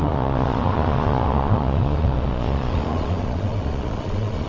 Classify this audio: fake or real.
fake